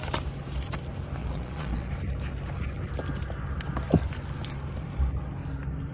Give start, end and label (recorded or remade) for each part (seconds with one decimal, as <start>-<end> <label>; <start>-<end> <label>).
0.0-1.2 recorded; 1.2-1.9 remade; 1.9-5.9 recorded